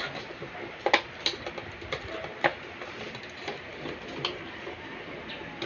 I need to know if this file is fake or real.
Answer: real